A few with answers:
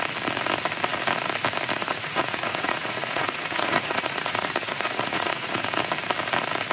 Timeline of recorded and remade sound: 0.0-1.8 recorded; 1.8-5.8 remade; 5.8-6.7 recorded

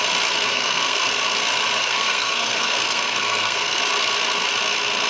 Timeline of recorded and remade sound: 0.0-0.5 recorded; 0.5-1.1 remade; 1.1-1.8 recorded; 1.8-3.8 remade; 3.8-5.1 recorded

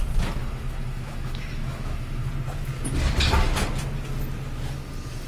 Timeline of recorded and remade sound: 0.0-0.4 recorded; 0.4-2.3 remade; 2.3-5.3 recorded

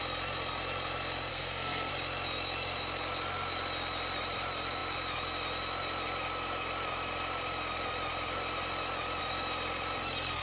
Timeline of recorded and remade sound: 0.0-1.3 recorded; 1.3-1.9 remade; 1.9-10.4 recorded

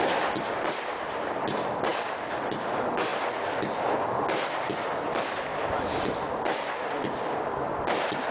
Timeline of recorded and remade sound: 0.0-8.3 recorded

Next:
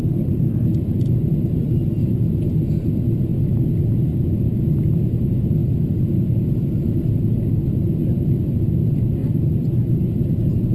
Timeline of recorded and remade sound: 0.0-9.2 recorded; 9.2-9.9 remade; 9.9-10.7 recorded